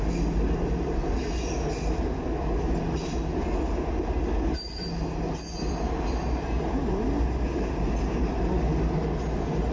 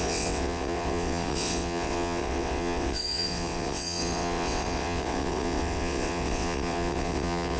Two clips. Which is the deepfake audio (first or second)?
second